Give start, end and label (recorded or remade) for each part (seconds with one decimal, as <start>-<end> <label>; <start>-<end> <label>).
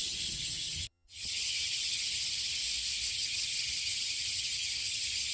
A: 0.0-2.6 remade; 2.6-3.1 recorded; 3.1-5.3 remade